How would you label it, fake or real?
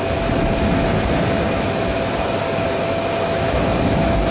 real